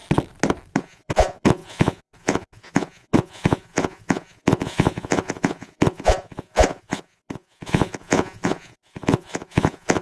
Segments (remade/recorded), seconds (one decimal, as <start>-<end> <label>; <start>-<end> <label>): 0.0-0.8 recorded; 0.8-10.0 remade